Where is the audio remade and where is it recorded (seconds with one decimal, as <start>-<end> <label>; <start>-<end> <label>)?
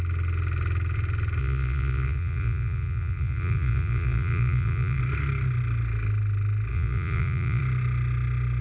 0.0-1.4 recorded; 1.4-5.0 remade; 5.0-6.7 recorded; 6.7-7.6 remade; 7.6-8.6 recorded